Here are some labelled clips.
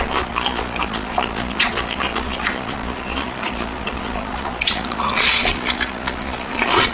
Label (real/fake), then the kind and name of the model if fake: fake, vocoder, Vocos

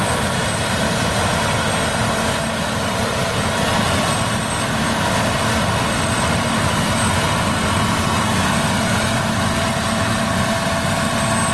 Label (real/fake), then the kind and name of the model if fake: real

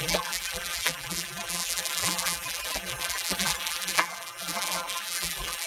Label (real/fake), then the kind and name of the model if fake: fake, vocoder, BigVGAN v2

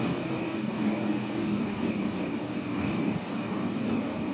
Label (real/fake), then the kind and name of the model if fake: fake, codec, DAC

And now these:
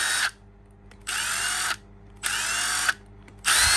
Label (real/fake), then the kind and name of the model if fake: real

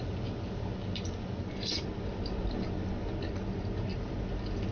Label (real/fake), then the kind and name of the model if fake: real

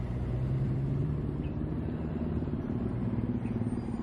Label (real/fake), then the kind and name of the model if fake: fake, vocoder, BigVGAN v2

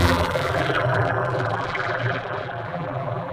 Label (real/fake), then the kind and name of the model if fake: fake, vocoder, BigVGAN v2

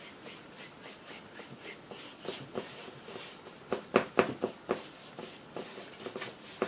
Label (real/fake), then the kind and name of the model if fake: real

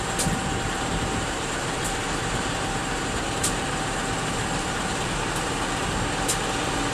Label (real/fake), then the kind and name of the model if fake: fake, vocoder, BigVGAN v2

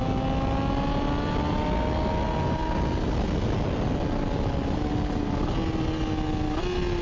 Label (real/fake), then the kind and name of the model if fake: real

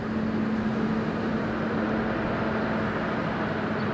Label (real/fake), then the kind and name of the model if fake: real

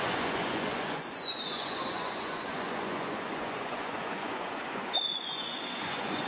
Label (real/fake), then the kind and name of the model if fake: fake, vocoder, Vocos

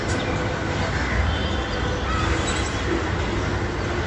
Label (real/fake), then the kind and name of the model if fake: real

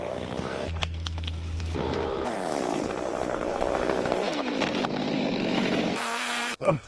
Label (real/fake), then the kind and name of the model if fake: fake, codec, SNAC